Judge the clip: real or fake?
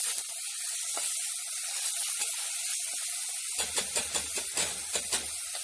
real